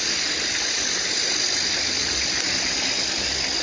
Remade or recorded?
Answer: recorded